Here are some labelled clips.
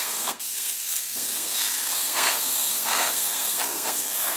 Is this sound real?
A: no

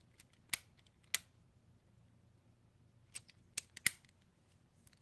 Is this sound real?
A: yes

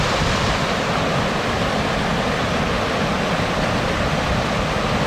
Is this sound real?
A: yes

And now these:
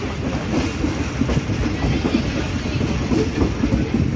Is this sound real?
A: yes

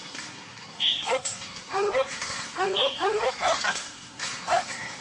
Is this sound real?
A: no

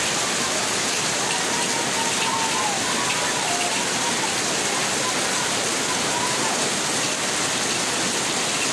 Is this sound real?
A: yes